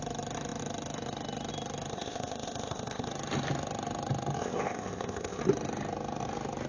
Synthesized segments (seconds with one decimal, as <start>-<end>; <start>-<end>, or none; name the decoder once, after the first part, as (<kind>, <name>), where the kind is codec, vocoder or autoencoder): 1.9-3.1 (codec, ZipCodec); 4.4-5.4